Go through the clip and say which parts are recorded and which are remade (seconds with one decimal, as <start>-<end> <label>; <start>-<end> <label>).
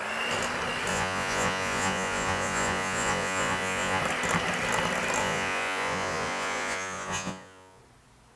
0.0-0.9 recorded; 0.9-4.0 remade; 4.0-5.2 recorded; 5.2-7.8 remade; 7.8-8.4 recorded